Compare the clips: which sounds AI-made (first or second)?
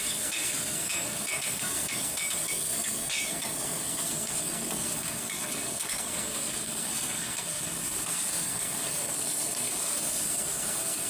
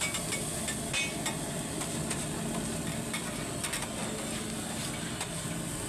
first